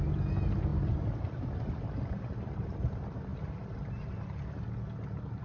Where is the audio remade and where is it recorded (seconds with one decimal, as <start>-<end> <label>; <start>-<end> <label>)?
0.0-5.4 recorded

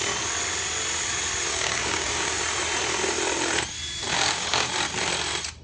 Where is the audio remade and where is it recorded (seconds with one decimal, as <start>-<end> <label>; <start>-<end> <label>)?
0.0-1.5 recorded; 1.5-2.4 remade; 2.4-4.1 recorded; 4.1-4.7 remade; 4.7-5.6 recorded

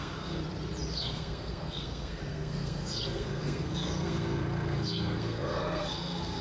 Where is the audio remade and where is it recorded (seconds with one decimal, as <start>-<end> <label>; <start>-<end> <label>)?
0.0-0.4 remade; 0.4-0.9 recorded; 0.9-6.4 remade

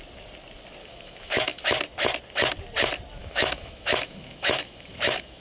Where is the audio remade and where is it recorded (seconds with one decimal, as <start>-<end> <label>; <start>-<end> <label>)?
0.0-0.8 recorded; 0.8-1.6 remade; 1.6-3.2 recorded; 3.2-5.4 remade

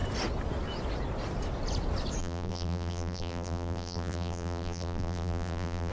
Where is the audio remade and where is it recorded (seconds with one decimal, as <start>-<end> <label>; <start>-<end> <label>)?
0.0-2.2 recorded; 2.2-5.9 remade

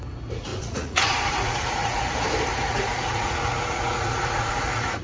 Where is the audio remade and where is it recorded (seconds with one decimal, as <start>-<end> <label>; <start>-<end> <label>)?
0.0-0.5 recorded; 0.5-2.0 remade; 2.0-2.5 recorded; 2.5-5.0 remade

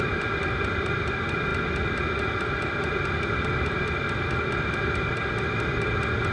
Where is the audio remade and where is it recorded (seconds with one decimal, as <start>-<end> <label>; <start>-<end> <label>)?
0.0-6.3 recorded